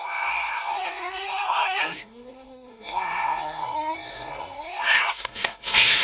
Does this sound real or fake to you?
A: fake